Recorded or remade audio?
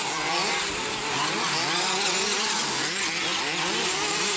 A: recorded